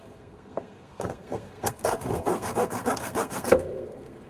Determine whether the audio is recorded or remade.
remade